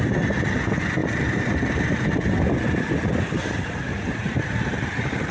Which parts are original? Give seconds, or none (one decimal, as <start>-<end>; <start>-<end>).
0.0-5.3